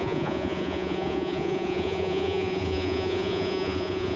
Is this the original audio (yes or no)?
no